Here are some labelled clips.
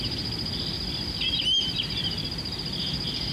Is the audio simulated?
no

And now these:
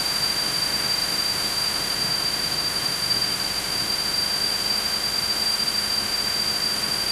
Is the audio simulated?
yes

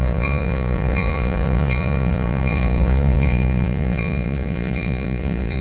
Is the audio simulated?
yes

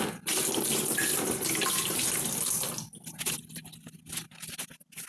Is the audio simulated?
no